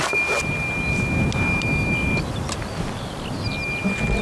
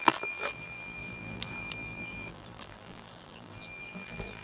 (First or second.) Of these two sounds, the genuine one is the first